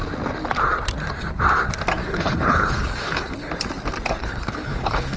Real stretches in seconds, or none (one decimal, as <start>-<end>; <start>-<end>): 0.0-2.0; 3.5-4.2

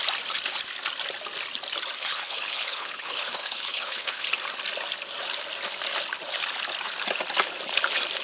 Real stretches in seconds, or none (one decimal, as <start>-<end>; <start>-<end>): 0.0-2.0; 4.3-8.2

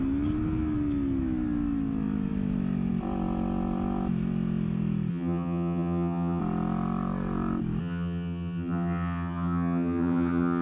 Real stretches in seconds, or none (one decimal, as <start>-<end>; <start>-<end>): 0.0-5.1; 6.4-7.8